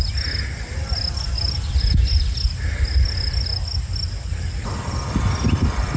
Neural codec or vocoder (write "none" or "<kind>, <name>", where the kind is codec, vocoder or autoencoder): none